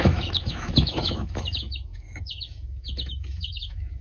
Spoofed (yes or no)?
yes